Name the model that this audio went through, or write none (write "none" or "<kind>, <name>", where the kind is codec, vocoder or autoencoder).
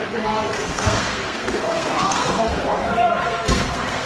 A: codec, SNAC